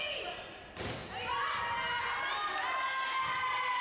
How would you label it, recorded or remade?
recorded